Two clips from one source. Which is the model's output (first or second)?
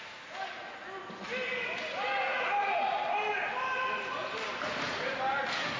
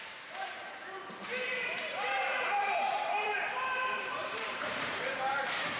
second